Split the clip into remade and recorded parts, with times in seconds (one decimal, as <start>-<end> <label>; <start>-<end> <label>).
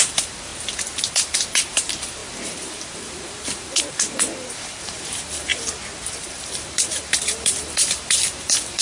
0.0-0.5 remade; 0.5-1.1 recorded; 1.1-5.5 remade; 5.5-6.1 recorded; 6.1-8.8 remade